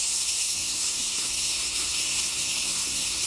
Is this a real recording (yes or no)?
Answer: no